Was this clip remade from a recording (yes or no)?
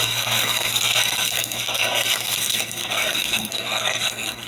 yes